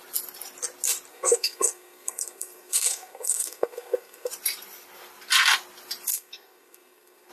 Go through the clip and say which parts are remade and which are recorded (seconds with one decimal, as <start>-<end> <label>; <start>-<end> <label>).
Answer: 0.0-1.1 recorded; 1.1-4.3 remade; 4.3-6.1 recorded; 6.1-7.3 remade